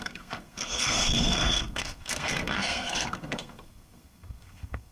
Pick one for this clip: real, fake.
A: fake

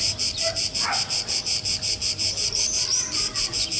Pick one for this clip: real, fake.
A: real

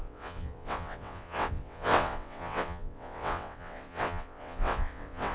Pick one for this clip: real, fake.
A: fake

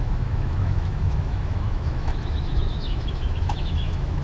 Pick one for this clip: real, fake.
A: fake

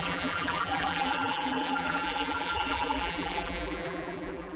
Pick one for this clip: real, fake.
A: fake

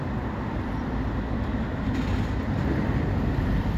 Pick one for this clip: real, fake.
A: fake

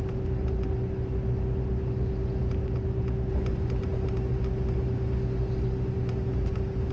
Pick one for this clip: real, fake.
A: real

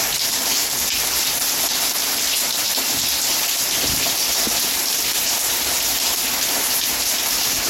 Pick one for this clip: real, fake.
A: real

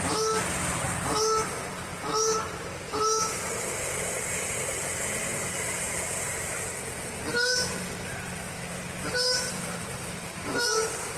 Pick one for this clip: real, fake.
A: fake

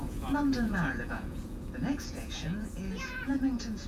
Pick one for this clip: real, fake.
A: fake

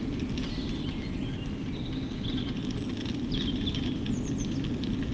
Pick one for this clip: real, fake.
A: real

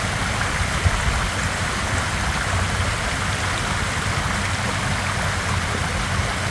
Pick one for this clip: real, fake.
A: real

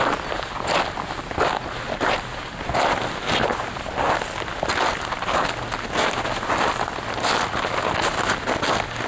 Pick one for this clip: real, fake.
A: real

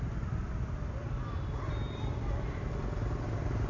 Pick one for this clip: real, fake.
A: real